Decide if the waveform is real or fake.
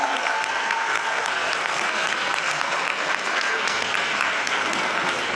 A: fake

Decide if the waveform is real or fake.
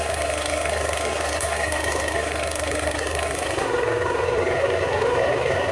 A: fake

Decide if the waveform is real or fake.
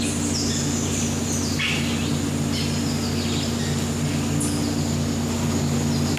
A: real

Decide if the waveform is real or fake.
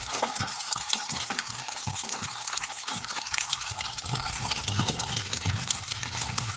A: fake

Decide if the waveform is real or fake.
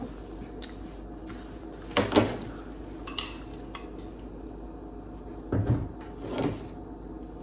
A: real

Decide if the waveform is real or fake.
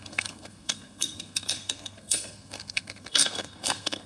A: fake